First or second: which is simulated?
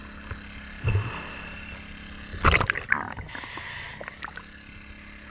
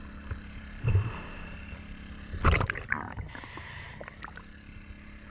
second